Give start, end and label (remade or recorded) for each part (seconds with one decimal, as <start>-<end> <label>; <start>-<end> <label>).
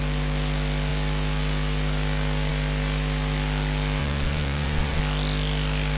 0.0-4.0 recorded; 4.0-5.0 remade; 5.0-6.0 recorded